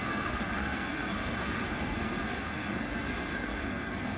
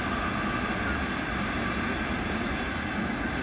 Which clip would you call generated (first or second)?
first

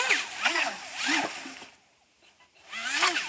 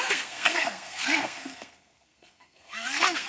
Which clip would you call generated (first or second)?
second